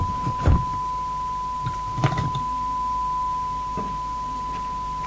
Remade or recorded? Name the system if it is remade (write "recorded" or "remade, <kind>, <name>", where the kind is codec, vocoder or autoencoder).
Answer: recorded